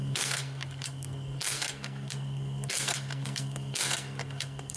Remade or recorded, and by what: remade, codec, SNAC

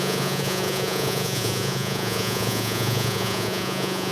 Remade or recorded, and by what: remade, vocoder, Vocos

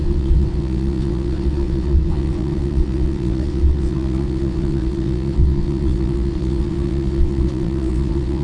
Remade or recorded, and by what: remade, vocoder, WaveNeXt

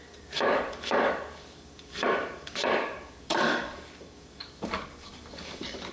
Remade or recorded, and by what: remade, codec, DAC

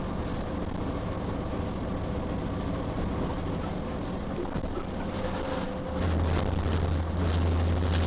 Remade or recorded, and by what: recorded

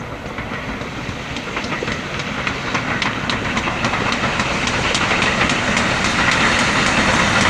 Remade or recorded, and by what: recorded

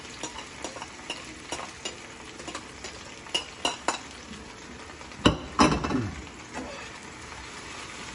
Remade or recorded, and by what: recorded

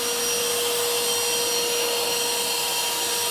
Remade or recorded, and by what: recorded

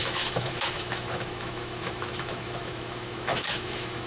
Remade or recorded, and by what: remade, autoencoder, DAC-VAE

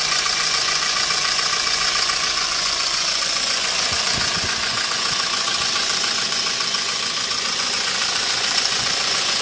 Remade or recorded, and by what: remade, vocoder, Vocos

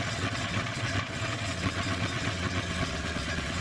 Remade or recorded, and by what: remade, vocoder, WaveNeXt